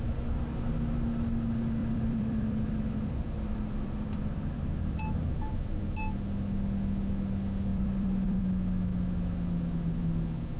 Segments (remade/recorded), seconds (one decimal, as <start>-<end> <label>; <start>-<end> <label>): 0.0-1.8 recorded; 1.8-5.0 remade; 5.0-7.7 recorded; 7.7-8.4 remade; 8.4-10.6 recorded